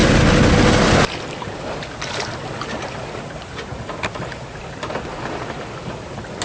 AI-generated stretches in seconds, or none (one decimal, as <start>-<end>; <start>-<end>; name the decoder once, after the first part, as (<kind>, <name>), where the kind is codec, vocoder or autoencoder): none